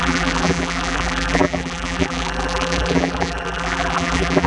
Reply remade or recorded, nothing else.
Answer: remade